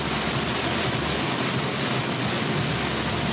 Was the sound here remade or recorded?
recorded